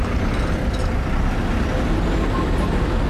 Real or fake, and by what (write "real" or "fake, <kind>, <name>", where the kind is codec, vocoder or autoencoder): real